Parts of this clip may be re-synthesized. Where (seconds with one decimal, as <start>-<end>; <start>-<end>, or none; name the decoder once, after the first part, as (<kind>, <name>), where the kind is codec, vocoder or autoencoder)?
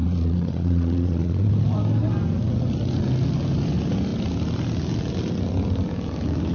0.0-1.5 (vocoder, Vocos)